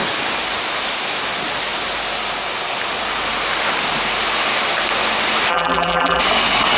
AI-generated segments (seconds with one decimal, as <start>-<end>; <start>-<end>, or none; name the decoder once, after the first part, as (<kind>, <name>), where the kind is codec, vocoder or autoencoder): 5.5-6.2 (vocoder, BigVGAN v2)